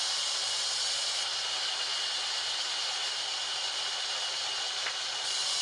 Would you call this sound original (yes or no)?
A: yes